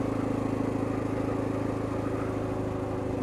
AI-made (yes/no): no